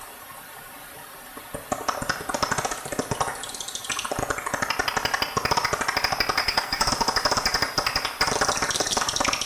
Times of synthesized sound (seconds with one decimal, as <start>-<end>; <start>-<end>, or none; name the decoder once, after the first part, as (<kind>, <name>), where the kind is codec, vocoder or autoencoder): 6.4-6.9 (codec, SNAC)